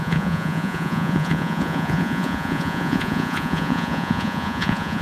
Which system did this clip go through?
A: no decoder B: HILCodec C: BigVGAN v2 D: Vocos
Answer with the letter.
D